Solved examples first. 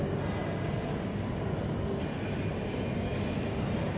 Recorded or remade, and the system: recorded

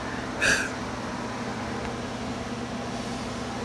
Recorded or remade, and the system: recorded